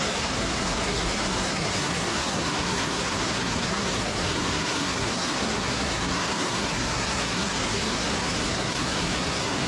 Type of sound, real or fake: fake